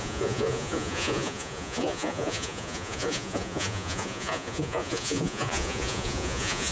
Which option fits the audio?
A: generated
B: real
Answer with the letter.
A